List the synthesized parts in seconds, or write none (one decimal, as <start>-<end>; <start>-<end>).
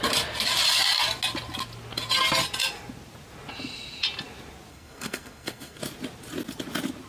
4.7-5.8